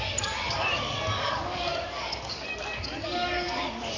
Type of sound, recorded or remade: remade